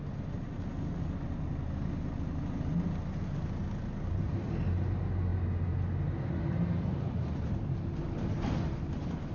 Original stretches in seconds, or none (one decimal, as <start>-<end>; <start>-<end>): 0.0-9.3